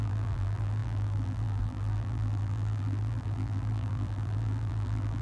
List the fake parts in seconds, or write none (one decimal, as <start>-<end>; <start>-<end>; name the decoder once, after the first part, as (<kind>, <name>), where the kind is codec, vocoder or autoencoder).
0.0-5.2 (vocoder, BigVGAN v2)